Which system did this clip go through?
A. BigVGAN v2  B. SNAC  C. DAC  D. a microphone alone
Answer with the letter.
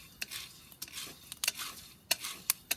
D